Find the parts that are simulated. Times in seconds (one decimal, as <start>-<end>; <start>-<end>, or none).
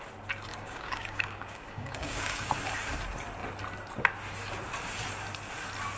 0.5-2.5